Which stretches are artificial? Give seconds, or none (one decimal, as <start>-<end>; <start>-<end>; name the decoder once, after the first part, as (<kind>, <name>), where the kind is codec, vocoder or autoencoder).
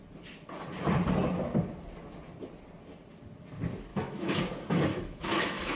3.9-4.4 (autoencoder, DAC-VAE); 4.9-5.8